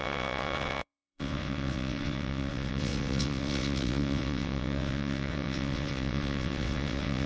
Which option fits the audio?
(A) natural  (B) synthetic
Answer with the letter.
B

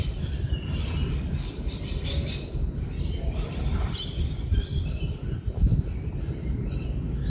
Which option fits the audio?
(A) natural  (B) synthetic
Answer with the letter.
A